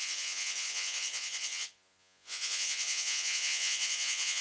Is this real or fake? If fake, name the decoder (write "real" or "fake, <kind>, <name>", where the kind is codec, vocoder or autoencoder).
fake, vocoder, Vocos